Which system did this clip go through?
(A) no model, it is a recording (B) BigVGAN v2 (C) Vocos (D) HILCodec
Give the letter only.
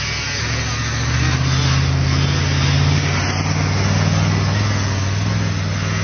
A